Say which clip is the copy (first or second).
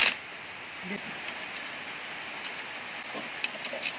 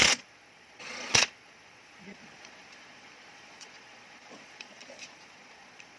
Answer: second